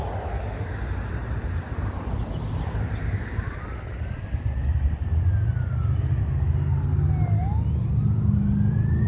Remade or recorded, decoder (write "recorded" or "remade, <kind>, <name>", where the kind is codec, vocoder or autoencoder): recorded